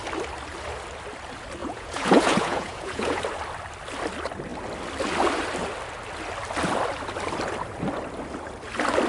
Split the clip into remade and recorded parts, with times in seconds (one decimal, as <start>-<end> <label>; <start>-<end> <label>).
0.0-1.6 recorded; 1.6-3.2 remade; 3.2-9.1 recorded